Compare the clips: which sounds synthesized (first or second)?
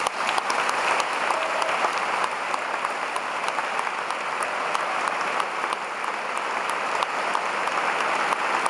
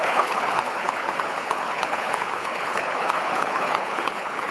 second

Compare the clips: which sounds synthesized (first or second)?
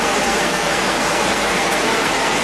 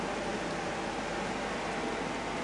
first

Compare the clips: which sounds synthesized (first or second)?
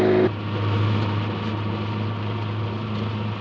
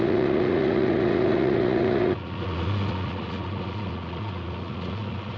second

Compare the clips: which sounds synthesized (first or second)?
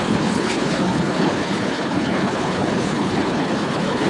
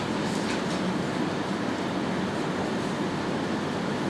first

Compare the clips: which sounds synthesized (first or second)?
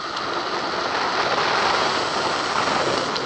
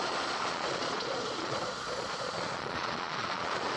second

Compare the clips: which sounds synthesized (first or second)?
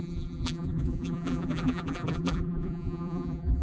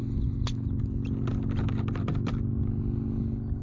first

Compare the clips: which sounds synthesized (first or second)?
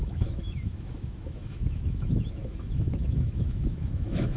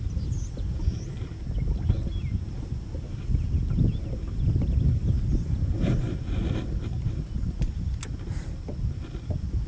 first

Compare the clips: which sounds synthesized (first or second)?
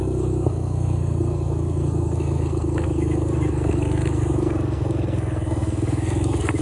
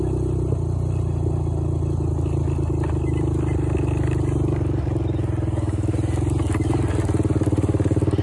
first